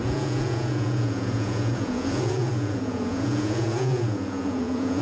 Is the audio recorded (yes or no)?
no